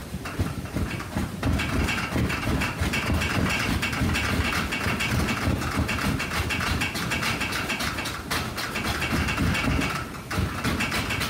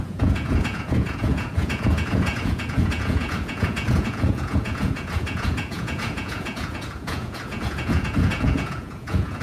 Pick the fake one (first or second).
second